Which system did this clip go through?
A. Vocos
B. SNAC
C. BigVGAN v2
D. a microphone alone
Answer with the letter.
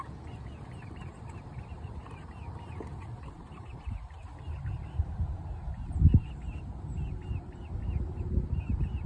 C